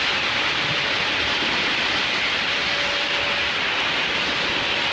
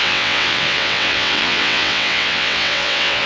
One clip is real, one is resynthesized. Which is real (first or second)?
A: first